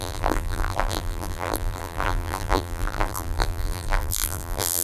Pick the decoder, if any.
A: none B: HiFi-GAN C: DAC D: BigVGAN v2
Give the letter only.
D